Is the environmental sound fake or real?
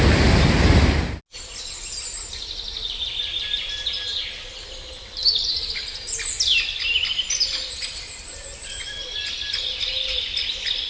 real